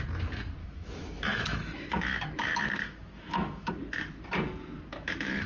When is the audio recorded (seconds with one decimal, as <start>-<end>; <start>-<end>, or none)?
0.0-0.6; 3.7-4.9